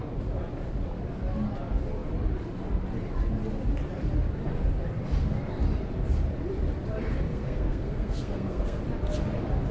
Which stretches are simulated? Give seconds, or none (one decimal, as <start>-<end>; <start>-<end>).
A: 7.3-8.8